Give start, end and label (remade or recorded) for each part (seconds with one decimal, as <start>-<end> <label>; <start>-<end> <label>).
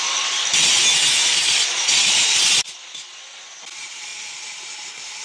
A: 0.0-1.2 recorded; 1.2-2.7 remade; 2.7-5.2 recorded